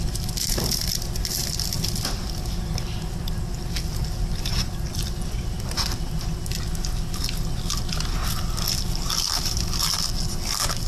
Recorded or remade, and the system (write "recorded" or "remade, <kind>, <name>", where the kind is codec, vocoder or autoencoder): recorded